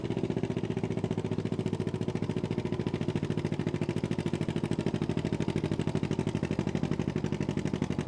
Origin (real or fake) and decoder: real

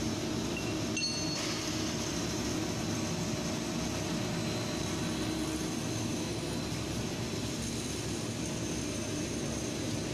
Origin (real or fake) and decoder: real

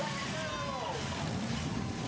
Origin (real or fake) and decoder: real